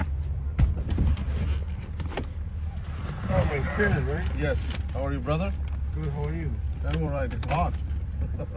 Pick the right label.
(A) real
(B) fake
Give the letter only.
B